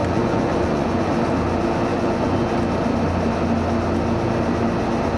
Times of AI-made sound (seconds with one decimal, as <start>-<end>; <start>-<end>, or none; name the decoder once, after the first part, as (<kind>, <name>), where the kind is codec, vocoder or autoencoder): 0.0-1.1 (vocoder, Vocos); 1.9-2.5